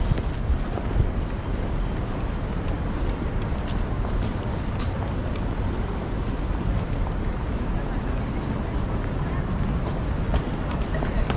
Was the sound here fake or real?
real